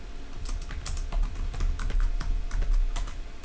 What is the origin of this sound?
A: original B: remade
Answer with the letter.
A